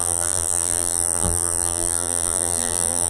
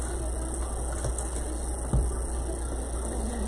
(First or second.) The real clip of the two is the second